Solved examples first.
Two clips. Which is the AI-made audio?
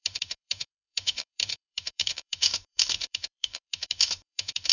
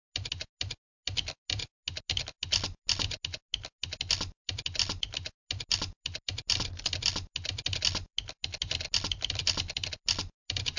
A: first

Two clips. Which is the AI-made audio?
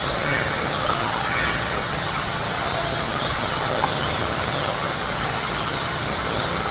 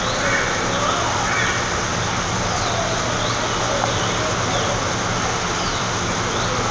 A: first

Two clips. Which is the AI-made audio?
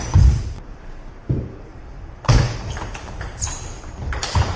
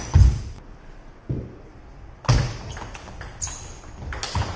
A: first